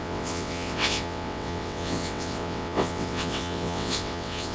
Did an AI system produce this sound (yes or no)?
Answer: yes